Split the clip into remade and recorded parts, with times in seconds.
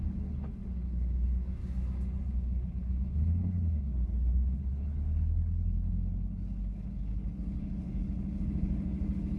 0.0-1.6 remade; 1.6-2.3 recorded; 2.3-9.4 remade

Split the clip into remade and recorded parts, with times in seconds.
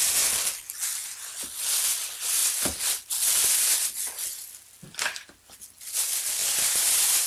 0.0-6.4 recorded; 6.4-7.3 remade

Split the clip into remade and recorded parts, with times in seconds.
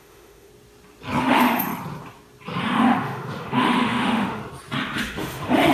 0.0-0.5 remade; 0.5-1.2 recorded; 1.2-1.7 remade; 1.7-2.6 recorded; 2.6-4.4 remade; 4.4-5.0 recorded; 5.0-5.7 remade